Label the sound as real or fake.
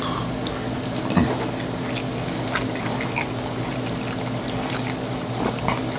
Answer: real